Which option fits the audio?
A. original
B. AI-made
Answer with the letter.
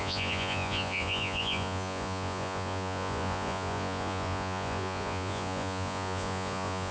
B